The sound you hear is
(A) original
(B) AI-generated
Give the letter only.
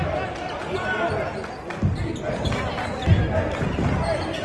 A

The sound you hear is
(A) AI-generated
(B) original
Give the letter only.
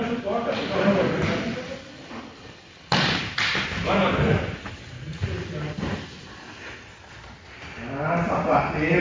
B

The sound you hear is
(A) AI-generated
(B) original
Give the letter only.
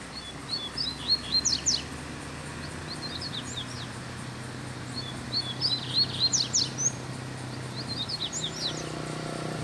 B